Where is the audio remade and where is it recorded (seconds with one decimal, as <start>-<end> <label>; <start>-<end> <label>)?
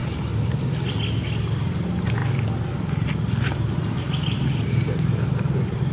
0.0-5.9 recorded